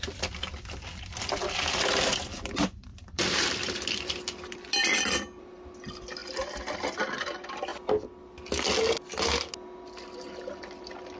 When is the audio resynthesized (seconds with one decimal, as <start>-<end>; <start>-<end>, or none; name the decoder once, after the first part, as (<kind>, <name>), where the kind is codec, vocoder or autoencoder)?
2.9-4.1 (vocoder, BigVGAN v2)